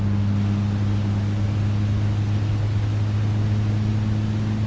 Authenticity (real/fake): real